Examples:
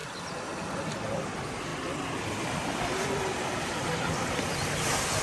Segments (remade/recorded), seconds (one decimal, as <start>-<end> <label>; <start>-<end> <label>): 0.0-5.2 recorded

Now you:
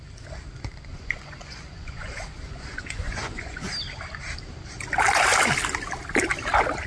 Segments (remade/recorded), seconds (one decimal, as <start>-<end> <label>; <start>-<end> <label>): 0.0-0.9 recorded; 0.9-3.7 remade; 3.7-6.9 recorded

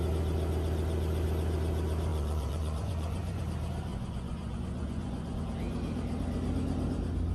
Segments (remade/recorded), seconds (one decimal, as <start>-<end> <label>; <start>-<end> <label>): 0.0-2.1 recorded; 2.1-3.4 remade; 3.4-3.9 recorded; 3.9-5.4 remade; 5.4-7.3 recorded